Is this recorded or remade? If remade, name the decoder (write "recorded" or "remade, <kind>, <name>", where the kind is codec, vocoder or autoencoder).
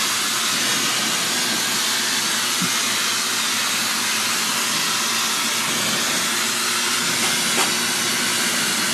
recorded